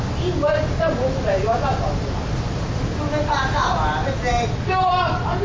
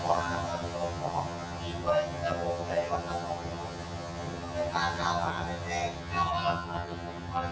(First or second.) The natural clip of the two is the first